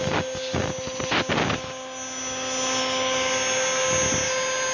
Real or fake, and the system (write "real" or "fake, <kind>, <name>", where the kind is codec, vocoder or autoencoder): real